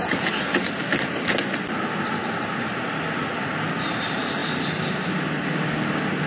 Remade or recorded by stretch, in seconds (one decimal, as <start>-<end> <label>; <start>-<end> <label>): 0.0-6.3 recorded